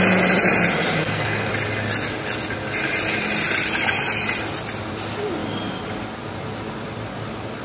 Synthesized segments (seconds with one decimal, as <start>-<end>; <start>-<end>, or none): 1.0-1.5

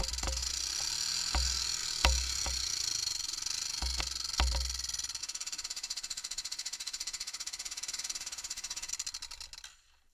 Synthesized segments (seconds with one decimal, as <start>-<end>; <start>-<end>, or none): 5.2-8.9

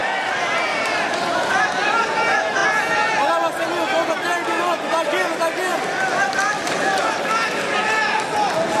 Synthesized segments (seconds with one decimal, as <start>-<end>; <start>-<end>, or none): 0.0-1.5; 5.7-8.2

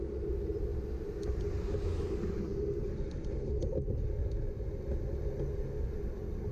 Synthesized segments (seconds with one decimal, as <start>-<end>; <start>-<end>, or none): none

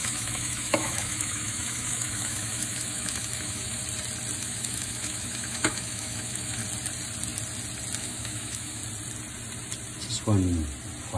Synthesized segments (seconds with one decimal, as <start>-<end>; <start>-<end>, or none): 0.0-3.8; 4.4-6.6; 8.0-8.8